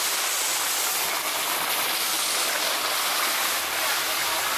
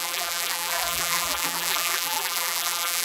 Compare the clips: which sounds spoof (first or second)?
second